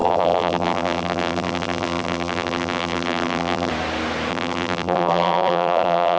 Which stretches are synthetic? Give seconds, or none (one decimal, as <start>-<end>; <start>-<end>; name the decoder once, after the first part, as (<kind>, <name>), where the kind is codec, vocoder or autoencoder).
0.0-3.7 (vocoder, BigVGAN v2); 4.3-6.2